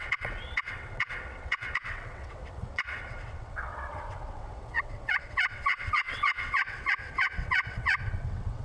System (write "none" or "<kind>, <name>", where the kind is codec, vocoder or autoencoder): vocoder, WaveNeXt